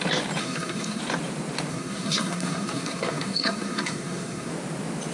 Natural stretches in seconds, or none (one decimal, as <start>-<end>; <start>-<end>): 0.0-0.4; 1.0-1.7; 4.5-5.1

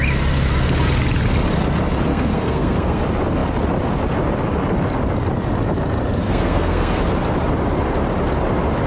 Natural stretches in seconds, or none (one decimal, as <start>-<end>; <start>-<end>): 0.0-2.1; 3.0-6.2; 7.0-8.9

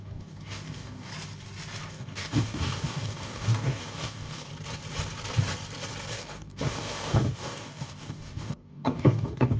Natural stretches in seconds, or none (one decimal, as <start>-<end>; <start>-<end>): 1.1-1.9; 4.5-6.1

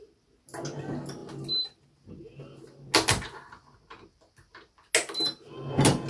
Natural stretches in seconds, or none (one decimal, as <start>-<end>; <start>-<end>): 0.0-6.1

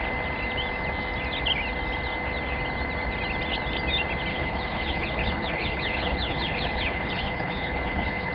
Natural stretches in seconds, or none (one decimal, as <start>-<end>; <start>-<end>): 0.0-4.3

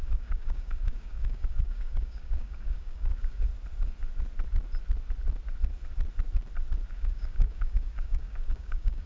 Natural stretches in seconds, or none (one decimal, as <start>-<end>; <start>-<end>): 3.5-6.9

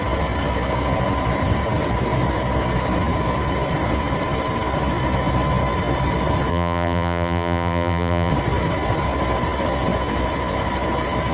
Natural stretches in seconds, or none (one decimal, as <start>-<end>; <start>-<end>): 0.0-6.5; 8.3-11.3

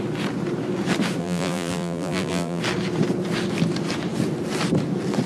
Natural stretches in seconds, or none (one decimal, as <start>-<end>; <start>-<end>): 0.0-1.2; 2.6-5.3